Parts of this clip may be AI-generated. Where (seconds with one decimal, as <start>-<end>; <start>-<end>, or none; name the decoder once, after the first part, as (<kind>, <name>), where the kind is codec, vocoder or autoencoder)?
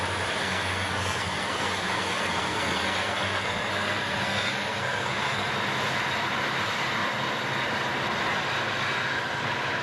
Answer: 0.4-5.5 (codec, SNAC)